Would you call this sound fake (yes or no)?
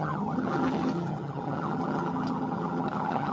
yes